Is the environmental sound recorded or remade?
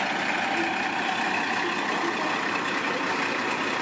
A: recorded